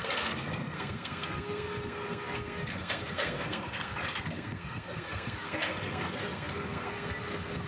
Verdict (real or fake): fake